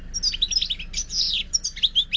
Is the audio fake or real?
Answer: real